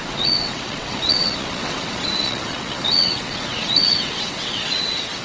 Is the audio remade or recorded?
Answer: remade